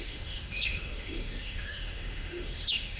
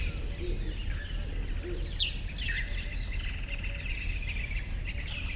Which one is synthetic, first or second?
first